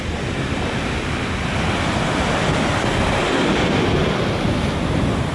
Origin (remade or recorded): recorded